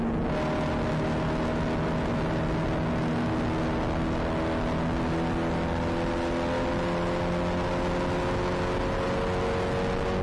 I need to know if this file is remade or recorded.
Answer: recorded